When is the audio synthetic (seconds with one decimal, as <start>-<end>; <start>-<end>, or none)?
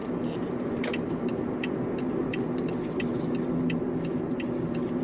none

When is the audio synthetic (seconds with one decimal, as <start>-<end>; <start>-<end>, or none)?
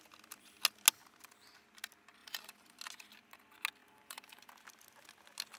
2.2-2.8; 3.8-4.5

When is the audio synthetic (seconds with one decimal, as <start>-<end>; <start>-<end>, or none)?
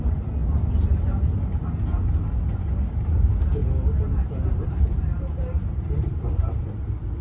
3.6-6.6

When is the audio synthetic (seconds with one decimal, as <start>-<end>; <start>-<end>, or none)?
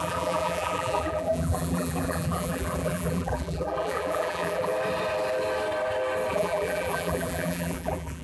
0.0-4.7; 6.3-8.2